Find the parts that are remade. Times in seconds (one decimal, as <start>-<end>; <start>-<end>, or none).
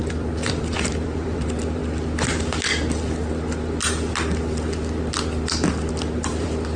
0.0-1.8; 5.9-6.8